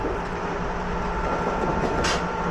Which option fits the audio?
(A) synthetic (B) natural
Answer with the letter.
B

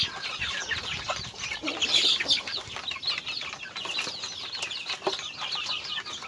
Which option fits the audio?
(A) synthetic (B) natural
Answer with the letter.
B